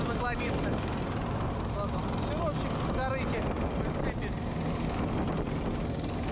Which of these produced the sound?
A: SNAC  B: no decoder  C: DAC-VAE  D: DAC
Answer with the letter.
B